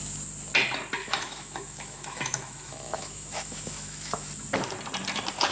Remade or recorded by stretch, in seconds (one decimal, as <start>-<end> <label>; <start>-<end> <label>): 0.0-1.0 recorded; 1.0-4.3 remade; 4.3-5.5 recorded